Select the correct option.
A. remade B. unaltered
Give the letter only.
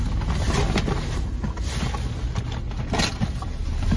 B